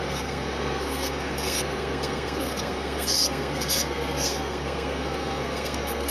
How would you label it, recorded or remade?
remade